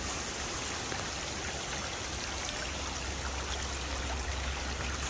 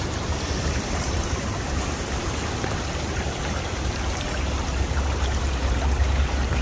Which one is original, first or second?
first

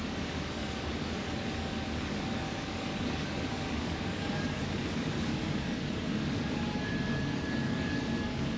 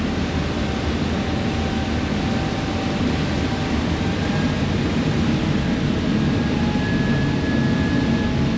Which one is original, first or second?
second